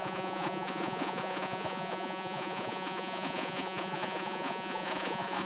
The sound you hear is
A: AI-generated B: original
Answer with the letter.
A